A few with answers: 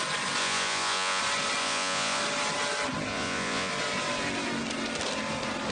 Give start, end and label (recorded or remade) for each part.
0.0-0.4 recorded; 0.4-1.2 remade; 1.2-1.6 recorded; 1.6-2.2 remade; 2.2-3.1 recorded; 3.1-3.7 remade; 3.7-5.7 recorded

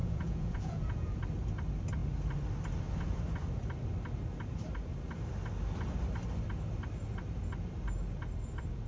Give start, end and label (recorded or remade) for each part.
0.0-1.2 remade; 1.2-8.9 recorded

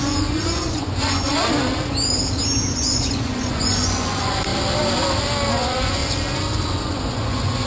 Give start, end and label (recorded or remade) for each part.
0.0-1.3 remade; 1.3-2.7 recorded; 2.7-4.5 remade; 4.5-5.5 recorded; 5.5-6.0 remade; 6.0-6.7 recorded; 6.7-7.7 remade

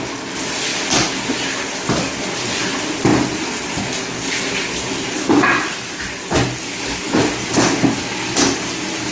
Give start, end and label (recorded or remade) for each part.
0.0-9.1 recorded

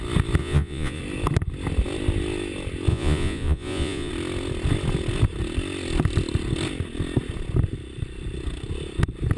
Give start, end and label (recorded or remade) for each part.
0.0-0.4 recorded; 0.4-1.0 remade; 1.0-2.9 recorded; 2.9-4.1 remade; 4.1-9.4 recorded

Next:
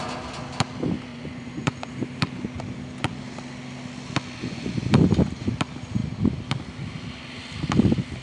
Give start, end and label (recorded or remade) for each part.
0.0-1.1 recorded; 1.1-1.9 remade; 1.9-4.4 recorded; 4.4-5.0 remade; 5.0-8.2 recorded

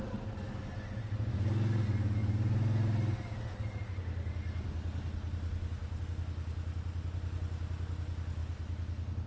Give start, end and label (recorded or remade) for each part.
0.0-9.3 recorded